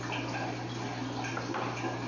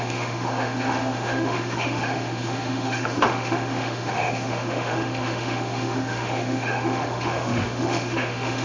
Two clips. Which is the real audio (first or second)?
first